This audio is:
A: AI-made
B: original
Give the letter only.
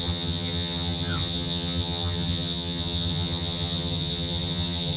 A